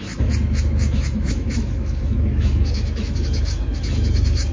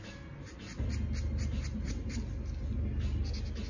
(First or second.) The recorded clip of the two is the second